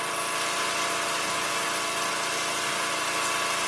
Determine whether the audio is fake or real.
real